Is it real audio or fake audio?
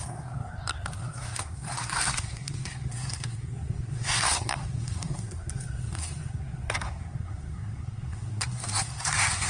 fake